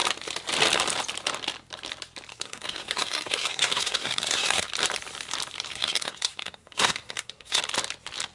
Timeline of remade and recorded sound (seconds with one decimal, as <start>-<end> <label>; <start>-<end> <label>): 0.0-2.3 recorded; 2.3-4.7 remade; 4.7-5.7 recorded; 5.7-7.6 remade; 7.6-8.3 recorded